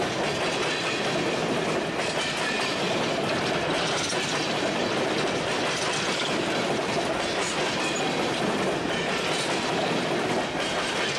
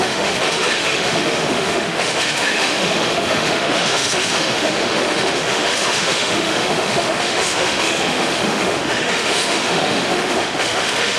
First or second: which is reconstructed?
second